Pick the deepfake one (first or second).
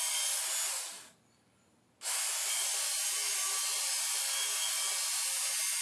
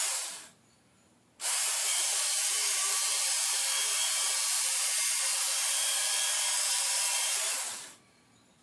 second